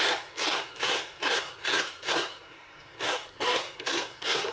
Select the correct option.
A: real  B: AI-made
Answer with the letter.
B